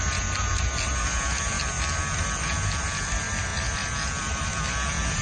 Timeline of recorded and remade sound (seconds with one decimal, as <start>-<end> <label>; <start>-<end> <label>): 0.0-5.2 recorded